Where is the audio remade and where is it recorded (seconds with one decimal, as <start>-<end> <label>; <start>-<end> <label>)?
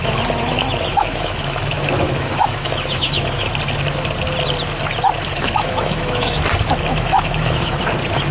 0.0-3.5 remade; 3.5-5.3 recorded; 5.3-6.4 remade; 6.4-6.9 recorded; 6.9-7.8 remade; 7.8-8.3 recorded